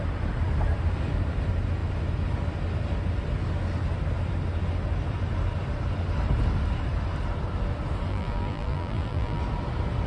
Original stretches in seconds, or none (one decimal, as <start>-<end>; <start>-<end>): 0.0-8.1; 9.4-10.1